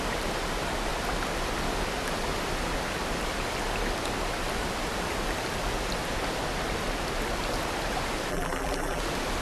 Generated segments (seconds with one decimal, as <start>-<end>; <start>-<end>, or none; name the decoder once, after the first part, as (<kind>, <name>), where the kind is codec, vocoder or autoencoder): 8.3-9.0 (vocoder, BigVGAN v2)